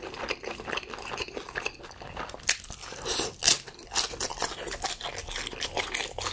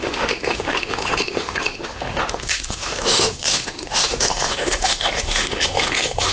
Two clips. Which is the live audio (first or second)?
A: first